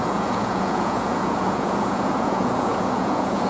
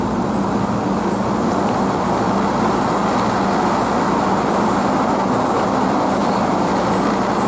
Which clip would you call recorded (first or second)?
second